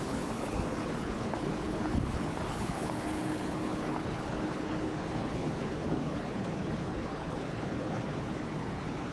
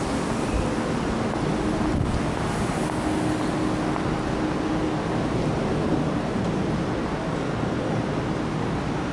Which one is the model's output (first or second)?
first